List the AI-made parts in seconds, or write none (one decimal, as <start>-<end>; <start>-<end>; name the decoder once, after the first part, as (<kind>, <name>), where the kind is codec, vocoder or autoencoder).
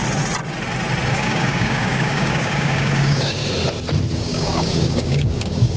1.1-3.4 (codec, DAC); 4.1-5.8